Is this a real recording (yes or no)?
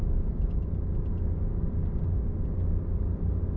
yes